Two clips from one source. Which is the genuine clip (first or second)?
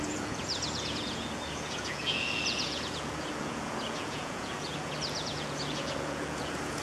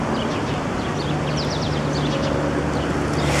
second